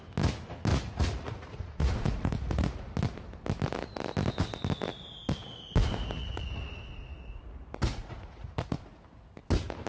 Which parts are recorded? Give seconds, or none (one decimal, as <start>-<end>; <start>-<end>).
0.0-0.7; 2.9-6.2; 7.4-7.9; 8.8-9.9